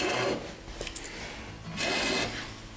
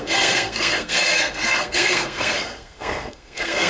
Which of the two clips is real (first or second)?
first